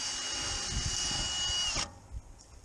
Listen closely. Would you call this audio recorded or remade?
recorded